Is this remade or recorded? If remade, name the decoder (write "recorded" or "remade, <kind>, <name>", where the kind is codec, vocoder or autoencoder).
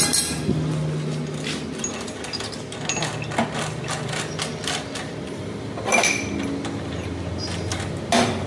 recorded